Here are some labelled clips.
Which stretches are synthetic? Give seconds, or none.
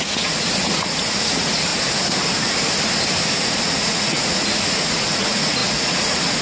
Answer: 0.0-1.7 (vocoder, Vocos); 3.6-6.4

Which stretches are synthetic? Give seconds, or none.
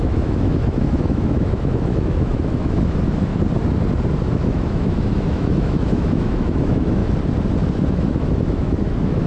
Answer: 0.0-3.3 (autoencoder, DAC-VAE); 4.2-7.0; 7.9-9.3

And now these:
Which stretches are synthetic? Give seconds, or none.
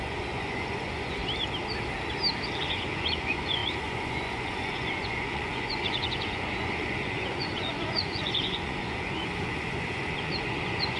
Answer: 0.0-1.2 (vocoder, Vocos); 2.6-11.0